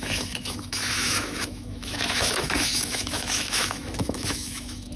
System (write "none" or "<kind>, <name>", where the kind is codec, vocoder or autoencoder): autoencoder, DAC-VAE